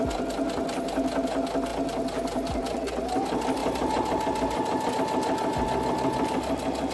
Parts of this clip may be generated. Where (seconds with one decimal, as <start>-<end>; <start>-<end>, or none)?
3.6-4.9